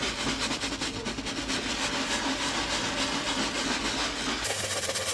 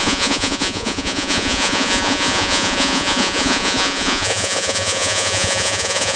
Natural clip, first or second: first